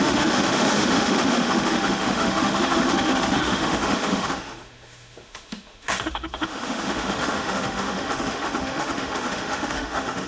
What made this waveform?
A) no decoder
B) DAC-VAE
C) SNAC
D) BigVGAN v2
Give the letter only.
B